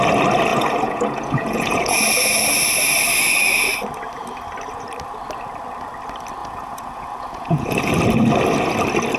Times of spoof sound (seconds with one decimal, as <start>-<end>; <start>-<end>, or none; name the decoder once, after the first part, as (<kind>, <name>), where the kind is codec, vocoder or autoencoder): 0.5-1.8 (vocoder, Vocos); 6.4-7.9